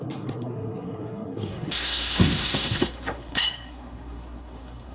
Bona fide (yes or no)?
no